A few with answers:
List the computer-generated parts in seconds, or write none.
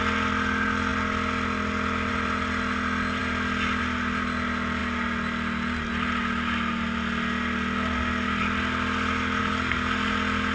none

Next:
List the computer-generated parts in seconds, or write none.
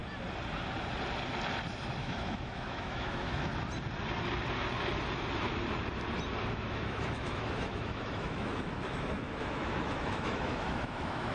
2.0-3.5 (autoencoder, DAC-VAE); 6.5-11.3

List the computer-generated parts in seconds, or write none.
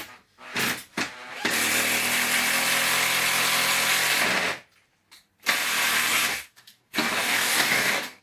6.1-8.2 (codec, DAC)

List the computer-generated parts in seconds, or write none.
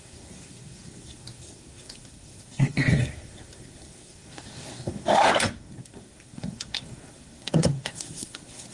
0.0-8.7 (codec, SNAC)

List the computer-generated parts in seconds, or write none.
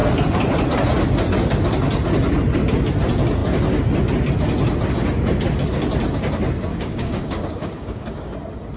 6.7-8.3 (codec, DAC)